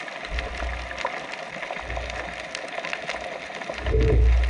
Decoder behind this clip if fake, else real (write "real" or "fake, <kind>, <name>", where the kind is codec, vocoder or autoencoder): real